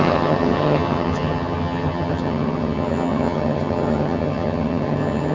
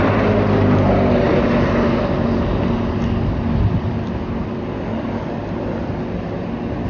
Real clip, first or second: second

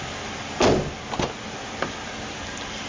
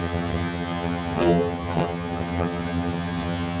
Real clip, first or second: first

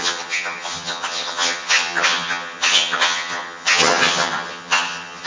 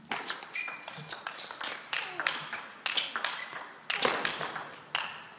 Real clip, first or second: second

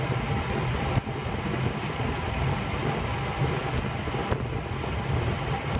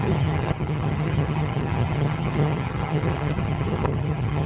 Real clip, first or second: first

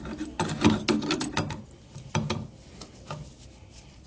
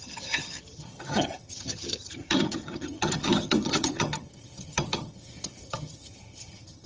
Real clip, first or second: first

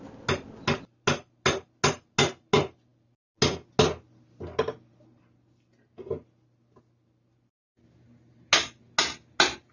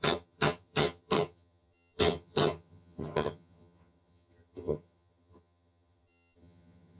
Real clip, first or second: first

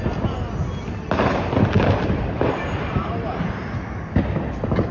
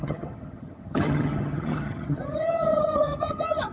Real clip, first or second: first